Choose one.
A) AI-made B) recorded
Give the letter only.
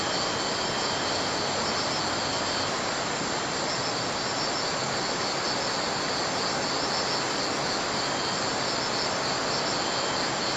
B